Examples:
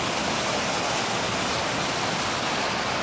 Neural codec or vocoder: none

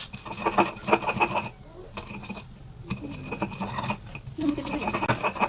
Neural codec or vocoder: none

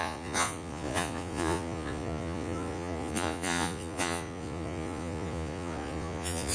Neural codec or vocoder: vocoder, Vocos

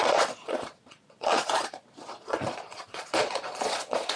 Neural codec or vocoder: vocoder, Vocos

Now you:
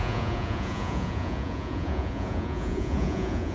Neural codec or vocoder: vocoder, Vocos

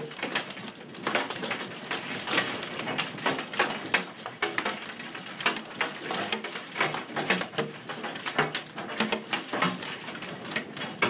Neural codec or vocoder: none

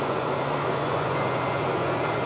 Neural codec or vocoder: vocoder, Vocos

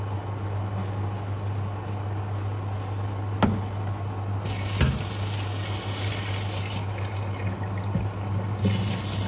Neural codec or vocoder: none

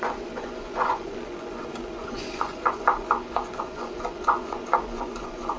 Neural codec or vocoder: vocoder, Vocos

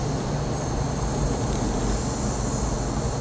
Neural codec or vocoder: none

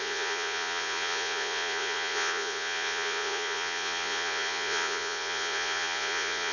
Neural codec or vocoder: vocoder, Vocos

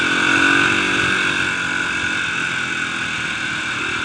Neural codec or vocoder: none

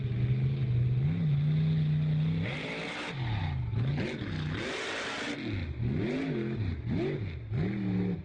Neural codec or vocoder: none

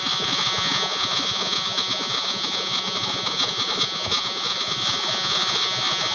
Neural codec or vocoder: vocoder, Vocos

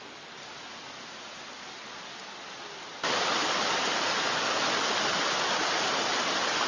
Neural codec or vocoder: none